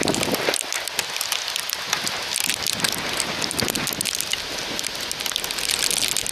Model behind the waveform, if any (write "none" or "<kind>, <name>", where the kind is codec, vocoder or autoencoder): none